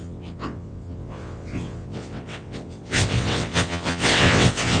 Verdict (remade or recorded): remade